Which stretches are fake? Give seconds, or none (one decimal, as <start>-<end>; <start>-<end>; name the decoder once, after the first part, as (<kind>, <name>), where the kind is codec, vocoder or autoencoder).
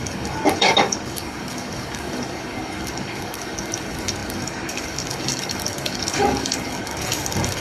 0.0-7.6 (codec, DAC)